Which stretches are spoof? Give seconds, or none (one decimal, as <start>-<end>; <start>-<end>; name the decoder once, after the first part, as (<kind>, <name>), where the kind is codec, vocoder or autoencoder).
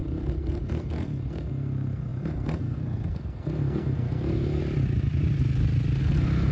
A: 0.0-4.6 (codec, SNAC); 6.0-6.5